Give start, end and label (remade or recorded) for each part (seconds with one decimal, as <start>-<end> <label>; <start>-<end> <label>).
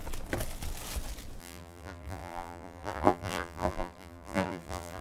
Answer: 0.0-1.4 recorded; 1.4-5.0 remade